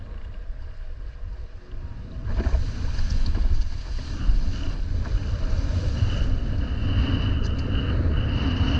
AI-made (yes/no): no